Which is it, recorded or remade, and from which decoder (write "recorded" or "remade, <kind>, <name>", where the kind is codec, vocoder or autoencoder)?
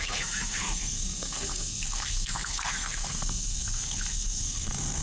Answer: remade, codec, SNAC